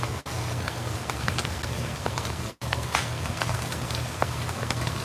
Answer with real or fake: fake